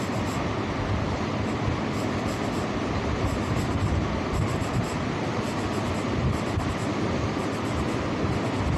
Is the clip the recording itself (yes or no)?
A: yes